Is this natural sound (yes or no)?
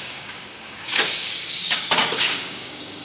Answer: no